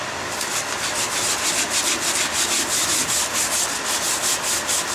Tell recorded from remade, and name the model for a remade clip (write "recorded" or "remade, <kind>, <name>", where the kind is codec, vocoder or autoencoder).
recorded